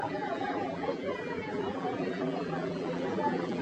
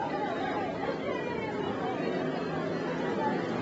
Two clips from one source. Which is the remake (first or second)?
first